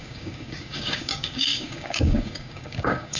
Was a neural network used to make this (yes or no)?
yes